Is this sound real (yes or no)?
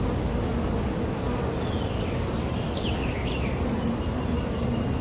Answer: yes